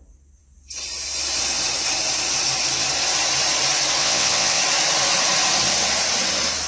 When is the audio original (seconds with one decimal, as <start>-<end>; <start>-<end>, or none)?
0.0-4.0; 4.6-6.7